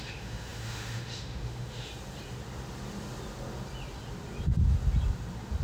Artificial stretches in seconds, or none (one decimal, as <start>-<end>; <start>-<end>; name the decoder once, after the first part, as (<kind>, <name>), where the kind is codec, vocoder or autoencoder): 0.0-1.9 (autoencoder, DAC-VAE)